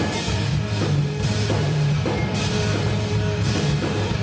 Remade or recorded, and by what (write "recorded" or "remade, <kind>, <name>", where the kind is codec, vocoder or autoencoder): remade, vocoder, BigVGAN v2